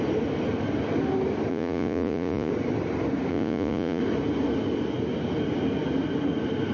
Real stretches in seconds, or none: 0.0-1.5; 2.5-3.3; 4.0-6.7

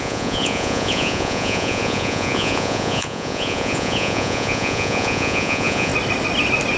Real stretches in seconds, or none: 5.9-6.8